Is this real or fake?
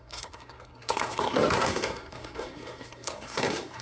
fake